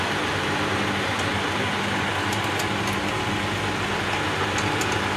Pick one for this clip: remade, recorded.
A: recorded